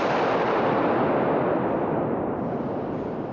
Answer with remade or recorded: recorded